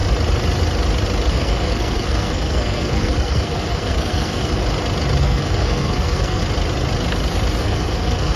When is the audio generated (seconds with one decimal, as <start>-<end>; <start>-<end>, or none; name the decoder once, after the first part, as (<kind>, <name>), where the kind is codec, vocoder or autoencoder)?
1.3-4.6 (codec, SNAC); 5.2-6.4; 7.6-8.4